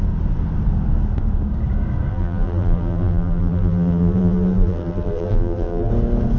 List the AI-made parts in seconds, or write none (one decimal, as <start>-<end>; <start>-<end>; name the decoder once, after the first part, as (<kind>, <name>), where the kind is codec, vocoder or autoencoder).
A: 2.1-5.9 (vocoder, BigVGAN v2)